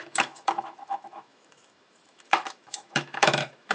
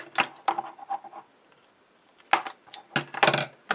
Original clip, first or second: second